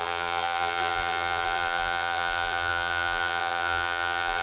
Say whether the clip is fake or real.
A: fake